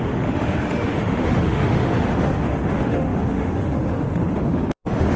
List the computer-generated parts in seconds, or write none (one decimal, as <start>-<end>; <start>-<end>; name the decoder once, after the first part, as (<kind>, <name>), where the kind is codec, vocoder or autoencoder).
0.0-5.2 (autoencoder, DAC-VAE)